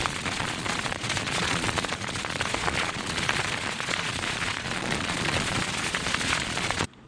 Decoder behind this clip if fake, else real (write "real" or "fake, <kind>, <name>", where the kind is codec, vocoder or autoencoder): fake, vocoder, Vocos